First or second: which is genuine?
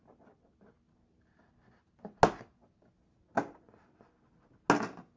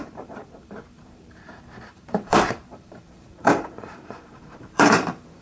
first